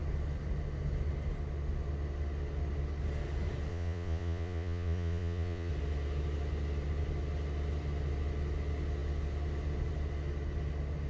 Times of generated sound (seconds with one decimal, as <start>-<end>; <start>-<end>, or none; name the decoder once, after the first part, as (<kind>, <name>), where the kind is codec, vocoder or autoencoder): 3.7-5.7 (vocoder, Vocos)